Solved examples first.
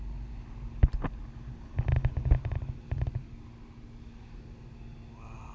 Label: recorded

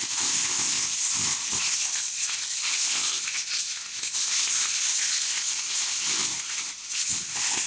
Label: remade